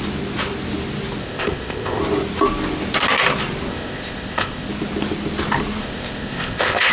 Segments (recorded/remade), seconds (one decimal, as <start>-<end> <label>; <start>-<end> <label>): 0.0-1.2 recorded; 1.2-2.0 remade; 2.0-3.7 recorded; 3.7-4.7 remade; 4.7-5.8 recorded; 5.8-6.9 remade